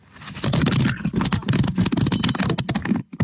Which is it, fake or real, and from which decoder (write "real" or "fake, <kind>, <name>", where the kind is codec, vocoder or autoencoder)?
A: real